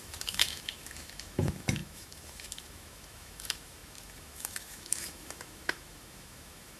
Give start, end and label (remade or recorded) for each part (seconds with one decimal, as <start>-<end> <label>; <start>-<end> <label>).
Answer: 0.0-6.8 remade